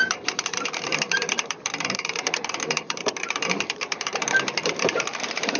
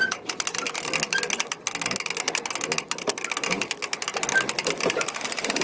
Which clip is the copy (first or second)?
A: first